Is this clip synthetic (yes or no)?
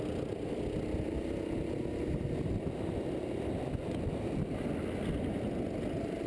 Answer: no